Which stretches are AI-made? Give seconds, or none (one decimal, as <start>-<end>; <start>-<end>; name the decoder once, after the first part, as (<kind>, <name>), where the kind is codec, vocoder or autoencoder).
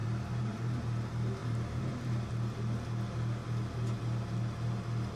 0.0-0.8 (vocoder, BigVGAN v2); 1.4-2.3